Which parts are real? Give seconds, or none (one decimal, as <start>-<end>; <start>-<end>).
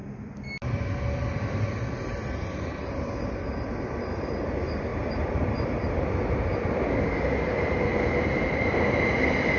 0.0-1.0; 4.9-8.2